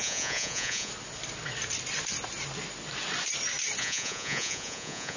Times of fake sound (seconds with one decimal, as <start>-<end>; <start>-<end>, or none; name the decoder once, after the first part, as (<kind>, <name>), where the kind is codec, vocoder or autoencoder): 0.0-0.9 (vocoder, Vocos); 3.8-5.2